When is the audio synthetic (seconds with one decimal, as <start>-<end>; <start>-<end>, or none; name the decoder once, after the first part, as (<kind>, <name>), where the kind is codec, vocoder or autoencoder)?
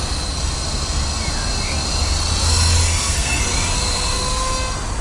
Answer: 2.9-3.4 (codec, SNAC)